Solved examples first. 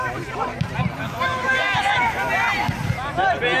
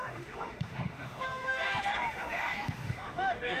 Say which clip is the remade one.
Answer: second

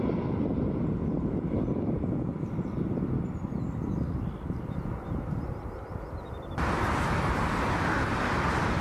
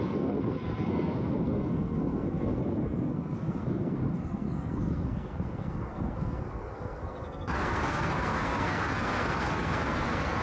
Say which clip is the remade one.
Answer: second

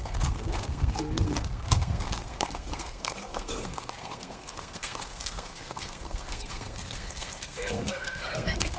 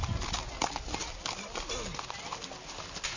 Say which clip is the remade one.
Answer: first